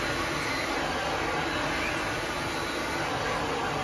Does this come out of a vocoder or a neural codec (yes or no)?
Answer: no